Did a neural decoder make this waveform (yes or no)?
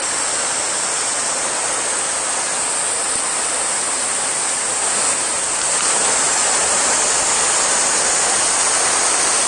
no